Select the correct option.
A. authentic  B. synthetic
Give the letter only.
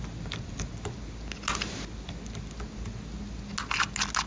A